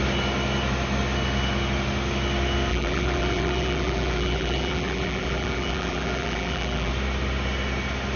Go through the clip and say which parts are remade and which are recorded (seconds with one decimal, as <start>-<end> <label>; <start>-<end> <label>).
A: 0.0-2.7 recorded; 2.7-6.9 remade; 6.9-8.2 recorded